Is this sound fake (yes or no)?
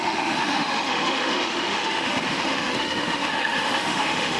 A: yes